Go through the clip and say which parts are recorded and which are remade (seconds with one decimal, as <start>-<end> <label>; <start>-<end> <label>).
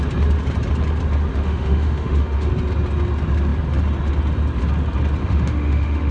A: 0.0-1.3 recorded; 1.3-2.5 remade; 2.5-5.2 recorded; 5.2-6.1 remade